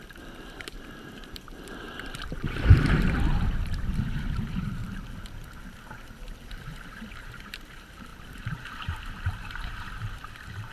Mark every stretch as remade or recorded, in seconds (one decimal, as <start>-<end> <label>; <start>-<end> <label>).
0.0-4.8 remade; 4.8-7.1 recorded; 7.1-10.7 remade